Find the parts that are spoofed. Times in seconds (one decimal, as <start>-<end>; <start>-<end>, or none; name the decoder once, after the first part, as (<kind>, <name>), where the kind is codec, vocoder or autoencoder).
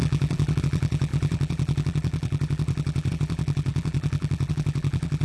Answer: 0.0-5.2 (vocoder, BigVGAN v2)